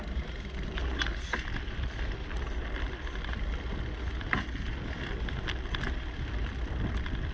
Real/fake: real